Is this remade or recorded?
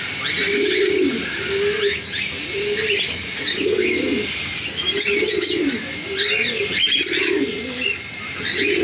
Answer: recorded